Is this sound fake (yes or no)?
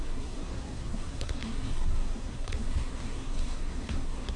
yes